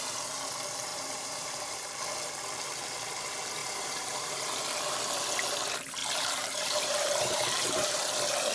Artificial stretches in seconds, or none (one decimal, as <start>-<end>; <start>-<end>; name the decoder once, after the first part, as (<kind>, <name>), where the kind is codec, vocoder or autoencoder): 0.9-1.9 (vocoder, BigVGAN v2); 3.6-4.6; 6.0-8.1